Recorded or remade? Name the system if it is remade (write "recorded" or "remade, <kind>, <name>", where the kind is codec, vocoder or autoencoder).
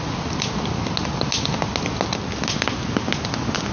recorded